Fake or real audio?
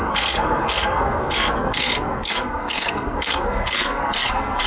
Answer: fake